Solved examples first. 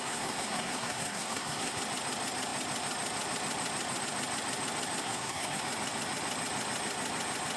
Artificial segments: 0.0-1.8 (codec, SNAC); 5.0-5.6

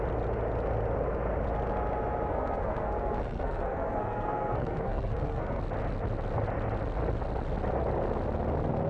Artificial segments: 2.3-5.6 (codec, SNAC)